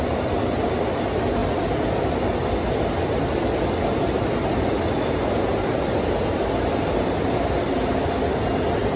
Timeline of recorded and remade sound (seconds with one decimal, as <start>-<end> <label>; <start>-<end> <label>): 0.0-9.0 recorded